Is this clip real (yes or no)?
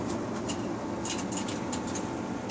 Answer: yes